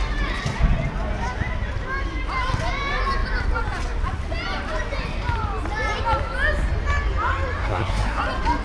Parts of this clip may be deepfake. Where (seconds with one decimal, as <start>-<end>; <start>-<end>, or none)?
7.6-8.2